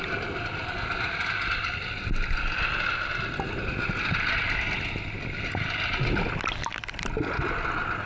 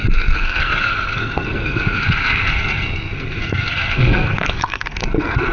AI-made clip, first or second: second